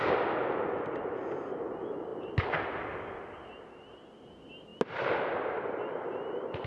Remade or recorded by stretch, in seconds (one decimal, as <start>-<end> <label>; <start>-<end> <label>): 0.0-6.7 recorded